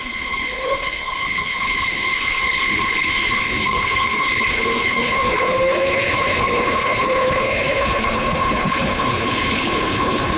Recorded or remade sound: remade